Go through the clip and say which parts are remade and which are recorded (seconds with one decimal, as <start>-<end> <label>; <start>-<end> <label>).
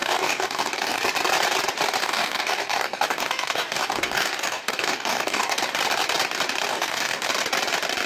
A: 0.0-1.0 remade; 1.0-2.0 recorded; 2.0-5.6 remade; 5.6-6.7 recorded; 6.7-7.3 remade; 7.3-8.1 recorded